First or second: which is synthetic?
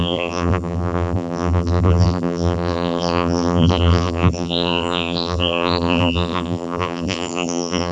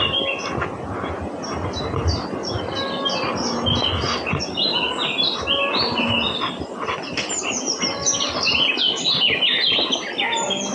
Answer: first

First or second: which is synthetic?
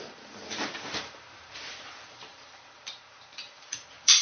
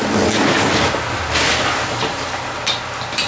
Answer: first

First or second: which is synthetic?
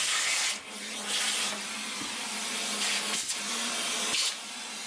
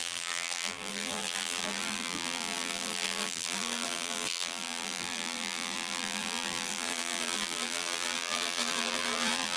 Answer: second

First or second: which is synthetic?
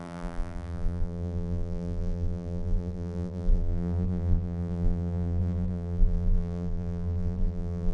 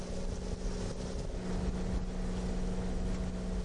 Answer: first